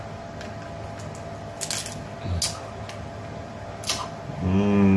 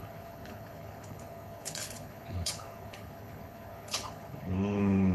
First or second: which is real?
first